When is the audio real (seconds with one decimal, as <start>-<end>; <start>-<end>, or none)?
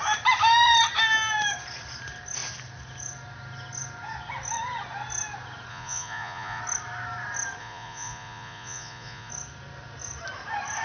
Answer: 0.0-5.7; 6.6-7.6; 9.3-10.8